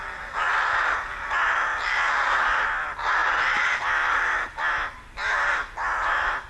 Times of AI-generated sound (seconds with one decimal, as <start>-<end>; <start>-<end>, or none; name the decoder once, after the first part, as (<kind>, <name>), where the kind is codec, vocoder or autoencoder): none